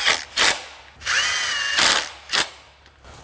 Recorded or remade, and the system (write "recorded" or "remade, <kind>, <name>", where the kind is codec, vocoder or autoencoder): recorded